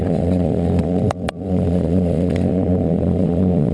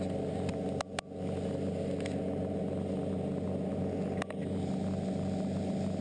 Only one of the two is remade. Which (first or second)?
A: first